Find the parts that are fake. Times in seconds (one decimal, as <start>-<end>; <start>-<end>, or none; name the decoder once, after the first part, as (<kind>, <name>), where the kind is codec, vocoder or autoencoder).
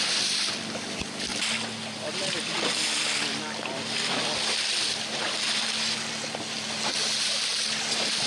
none